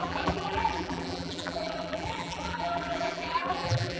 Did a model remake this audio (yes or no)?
yes